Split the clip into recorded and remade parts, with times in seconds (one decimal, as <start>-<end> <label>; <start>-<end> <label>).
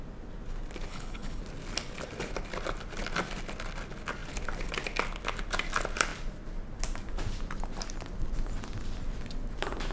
0.0-0.9 recorded; 0.9-1.4 remade; 1.4-9.9 recorded